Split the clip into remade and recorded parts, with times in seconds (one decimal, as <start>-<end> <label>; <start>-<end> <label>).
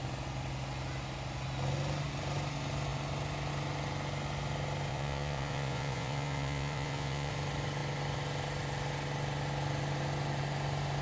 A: 0.0-4.9 recorded; 4.9-7.3 remade; 7.3-11.0 recorded